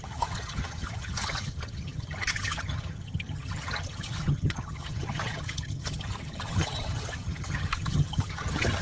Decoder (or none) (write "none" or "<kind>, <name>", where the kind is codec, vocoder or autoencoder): vocoder, HiFi-GAN